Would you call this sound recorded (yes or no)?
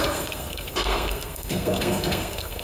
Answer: no